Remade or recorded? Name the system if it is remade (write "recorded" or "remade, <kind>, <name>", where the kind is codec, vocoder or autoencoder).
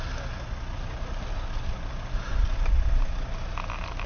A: recorded